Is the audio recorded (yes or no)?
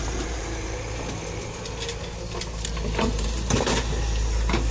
yes